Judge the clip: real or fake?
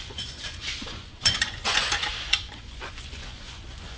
fake